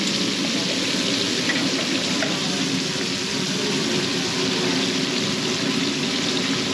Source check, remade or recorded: recorded